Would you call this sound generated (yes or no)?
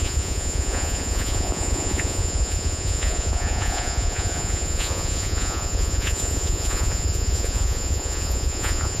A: yes